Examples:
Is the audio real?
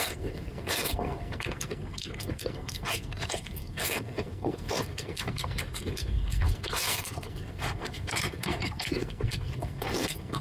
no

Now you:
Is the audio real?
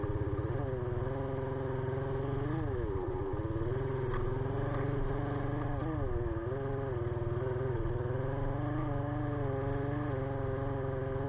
yes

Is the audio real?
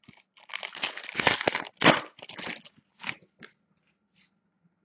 yes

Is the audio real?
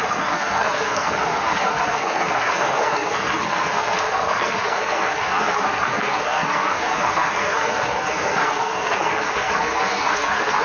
no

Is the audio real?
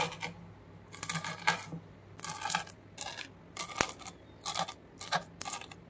yes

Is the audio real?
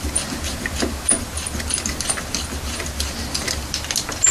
yes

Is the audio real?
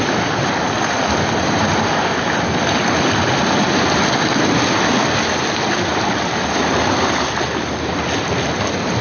yes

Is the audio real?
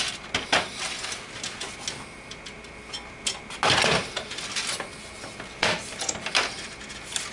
yes